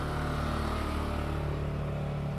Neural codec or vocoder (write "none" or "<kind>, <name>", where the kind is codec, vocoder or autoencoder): none